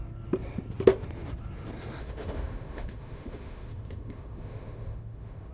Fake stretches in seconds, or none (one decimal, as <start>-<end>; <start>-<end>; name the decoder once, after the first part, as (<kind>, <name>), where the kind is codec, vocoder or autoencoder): 2.0-5.5 (autoencoder, DAC-VAE)

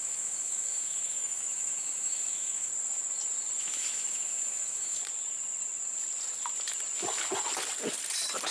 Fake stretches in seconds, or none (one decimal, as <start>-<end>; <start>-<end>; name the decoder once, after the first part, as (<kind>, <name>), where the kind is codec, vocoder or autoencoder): 0.0-2.7 (autoencoder, DAC-VAE); 3.6-5.0

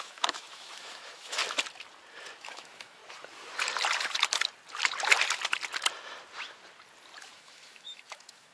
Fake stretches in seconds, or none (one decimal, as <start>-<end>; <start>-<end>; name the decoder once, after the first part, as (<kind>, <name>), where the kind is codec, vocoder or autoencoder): 0.0-1.4 (autoencoder, DAC-VAE); 2.4-3.0; 7.2-8.5

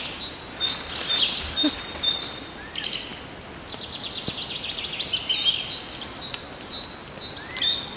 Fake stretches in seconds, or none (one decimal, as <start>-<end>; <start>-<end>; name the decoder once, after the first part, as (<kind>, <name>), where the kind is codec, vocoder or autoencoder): none

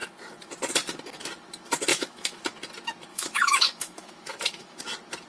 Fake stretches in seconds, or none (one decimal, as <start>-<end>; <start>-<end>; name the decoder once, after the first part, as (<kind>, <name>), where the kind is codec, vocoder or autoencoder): 1.9-2.4 (autoencoder, DAC-VAE); 3.1-4.8

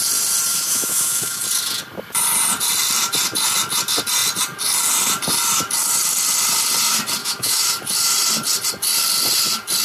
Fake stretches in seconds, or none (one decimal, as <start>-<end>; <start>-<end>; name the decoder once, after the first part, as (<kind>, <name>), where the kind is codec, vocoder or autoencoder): 0.5-1.4 (autoencoder, DAC-VAE); 7.2-7.7

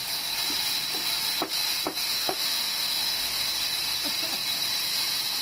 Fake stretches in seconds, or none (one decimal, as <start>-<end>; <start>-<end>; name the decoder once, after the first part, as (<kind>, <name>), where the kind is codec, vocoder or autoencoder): 2.1-3.5 (autoencoder, DAC-VAE)